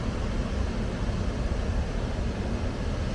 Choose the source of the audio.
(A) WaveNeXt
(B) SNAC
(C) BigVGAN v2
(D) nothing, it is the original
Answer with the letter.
D